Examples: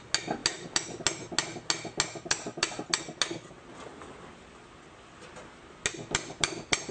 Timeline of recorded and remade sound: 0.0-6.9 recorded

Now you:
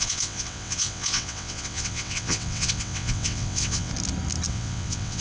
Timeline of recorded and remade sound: 0.0-3.9 remade; 3.9-4.5 recorded; 4.5-5.2 remade

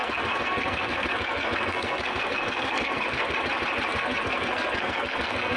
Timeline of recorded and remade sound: 0.0-3.4 remade; 3.4-3.9 recorded; 3.9-5.6 remade

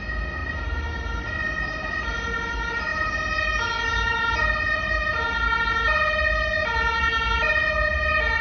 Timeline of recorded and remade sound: 0.0-8.4 recorded

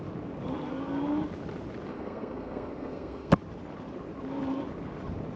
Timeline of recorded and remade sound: 0.0-1.9 recorded; 1.9-3.3 remade; 3.3-5.4 recorded

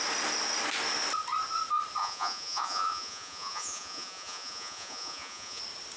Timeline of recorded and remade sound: 0.0-2.0 recorded; 2.0-5.6 remade; 5.6-6.0 recorded

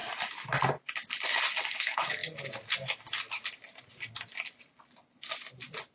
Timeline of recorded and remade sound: 0.0-1.8 recorded; 1.8-2.2 remade; 2.2-5.9 recorded

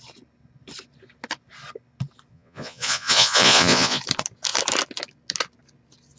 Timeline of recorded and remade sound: 0.0-2.3 recorded; 2.3-4.0 remade; 4.0-6.2 recorded